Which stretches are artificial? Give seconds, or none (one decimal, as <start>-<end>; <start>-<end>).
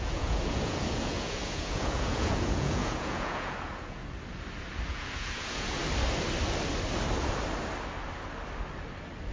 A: 0.0-4.0; 4.9-5.8